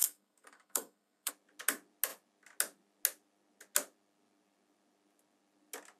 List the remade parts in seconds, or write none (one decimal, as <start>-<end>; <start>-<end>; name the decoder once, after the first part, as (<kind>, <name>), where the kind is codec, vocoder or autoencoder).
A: 0.0-1.3 (codec, SNAC)